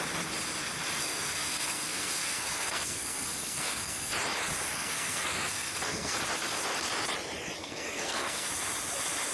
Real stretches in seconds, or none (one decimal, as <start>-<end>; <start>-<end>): 0.0-1.0; 4.1-4.7; 6.2-7.6; 8.5-9.3